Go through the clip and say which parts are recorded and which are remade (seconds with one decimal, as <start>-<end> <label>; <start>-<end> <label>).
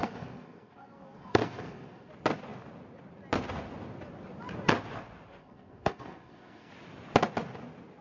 0.0-2.1 remade; 2.1-5.4 recorded; 5.4-6.7 remade; 6.7-8.0 recorded